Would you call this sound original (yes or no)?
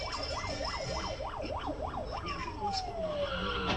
yes